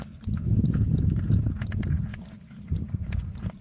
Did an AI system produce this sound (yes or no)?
no